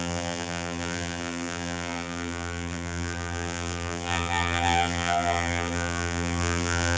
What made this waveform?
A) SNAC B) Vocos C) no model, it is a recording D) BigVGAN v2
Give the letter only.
D